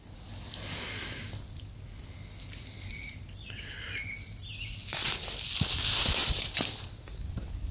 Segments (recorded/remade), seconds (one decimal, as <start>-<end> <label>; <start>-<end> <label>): 0.0-7.7 recorded